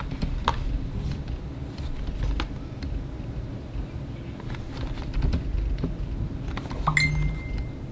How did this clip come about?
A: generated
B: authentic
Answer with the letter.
B